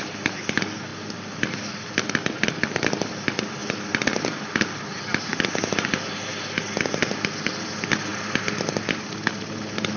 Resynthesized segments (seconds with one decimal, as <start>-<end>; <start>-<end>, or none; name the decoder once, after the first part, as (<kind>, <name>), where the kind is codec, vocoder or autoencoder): 0.9-2.1 (vocoder, BigVGAN v2); 8.1-8.8